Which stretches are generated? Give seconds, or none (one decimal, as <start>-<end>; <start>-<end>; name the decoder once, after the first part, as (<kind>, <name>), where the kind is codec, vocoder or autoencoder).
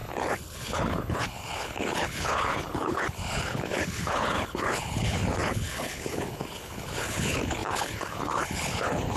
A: 0.0-9.2 (codec, HILCodec)